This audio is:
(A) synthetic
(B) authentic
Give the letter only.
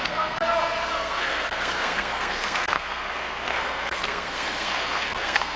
A